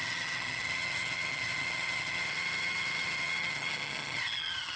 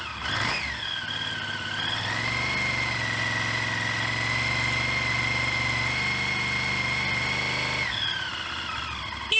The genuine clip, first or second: second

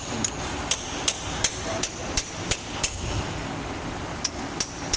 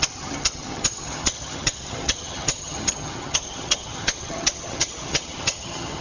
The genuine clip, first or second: first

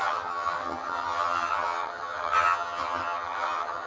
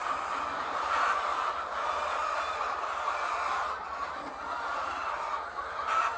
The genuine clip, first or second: second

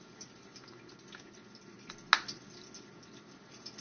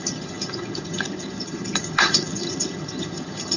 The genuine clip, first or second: first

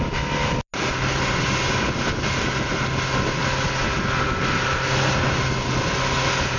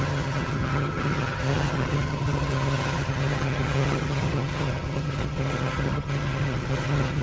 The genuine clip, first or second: first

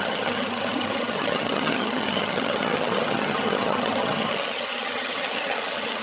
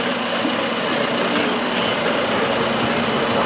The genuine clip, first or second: second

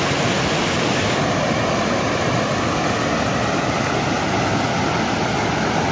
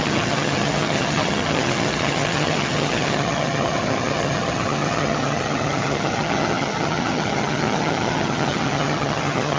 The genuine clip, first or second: first